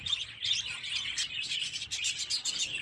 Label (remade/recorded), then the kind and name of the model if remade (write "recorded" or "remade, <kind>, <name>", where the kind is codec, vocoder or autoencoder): recorded